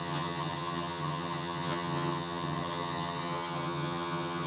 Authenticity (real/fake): fake